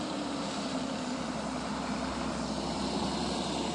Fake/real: fake